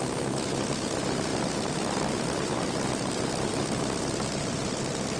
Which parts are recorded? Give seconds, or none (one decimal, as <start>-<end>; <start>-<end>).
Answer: 0.0-5.2